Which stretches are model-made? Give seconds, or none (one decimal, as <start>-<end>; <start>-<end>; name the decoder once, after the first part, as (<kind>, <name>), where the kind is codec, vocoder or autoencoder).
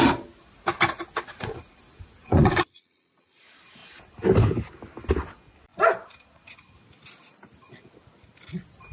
2.2-3.4 (vocoder, Vocos)